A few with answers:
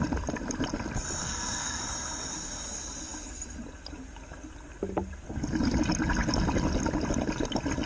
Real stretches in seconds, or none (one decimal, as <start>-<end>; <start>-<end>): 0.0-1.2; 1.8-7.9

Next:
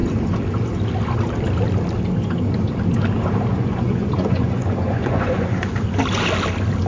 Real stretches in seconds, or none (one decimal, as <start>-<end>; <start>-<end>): 0.0-3.5; 5.8-6.9

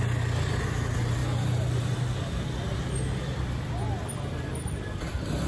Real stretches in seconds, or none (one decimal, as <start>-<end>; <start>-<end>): 0.0-5.5

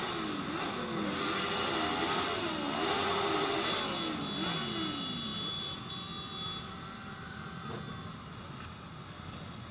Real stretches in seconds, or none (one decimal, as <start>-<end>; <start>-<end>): 0.0-9.7

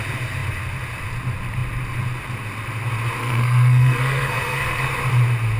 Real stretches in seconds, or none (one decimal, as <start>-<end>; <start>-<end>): 0.0-3.2; 4.9-5.6